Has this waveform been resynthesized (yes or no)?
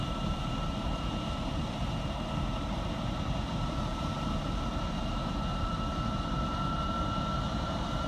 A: yes